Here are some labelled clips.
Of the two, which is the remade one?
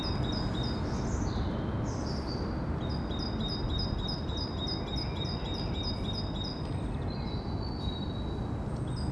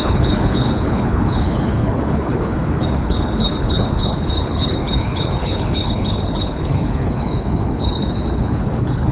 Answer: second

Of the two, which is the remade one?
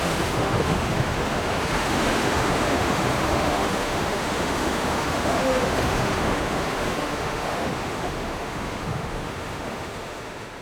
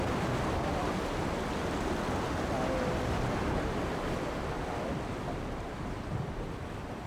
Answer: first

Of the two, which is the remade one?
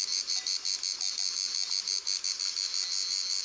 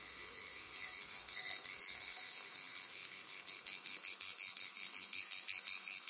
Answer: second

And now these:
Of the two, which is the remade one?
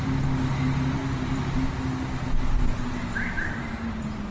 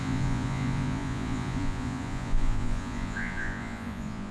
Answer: second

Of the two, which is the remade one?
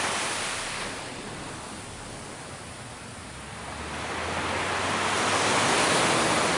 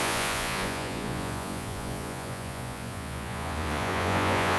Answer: second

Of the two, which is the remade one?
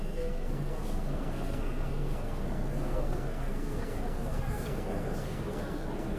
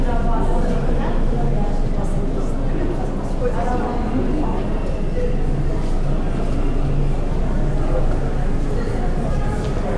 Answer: first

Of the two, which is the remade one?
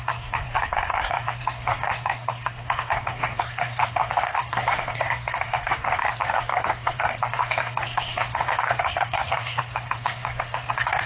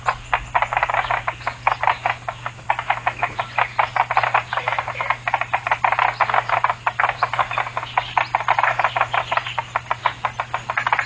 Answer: first